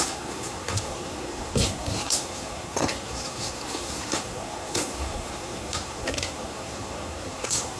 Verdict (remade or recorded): remade